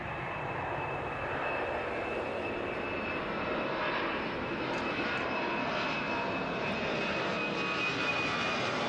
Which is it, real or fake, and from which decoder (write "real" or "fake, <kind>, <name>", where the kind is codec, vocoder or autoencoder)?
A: fake, vocoder, BigVGAN v2